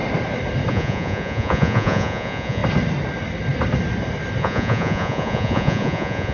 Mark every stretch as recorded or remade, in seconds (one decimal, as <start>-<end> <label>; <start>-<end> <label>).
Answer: 0.0-0.7 recorded; 0.7-2.6 remade; 2.6-4.4 recorded; 4.4-6.3 remade